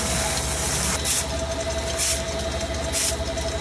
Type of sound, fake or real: real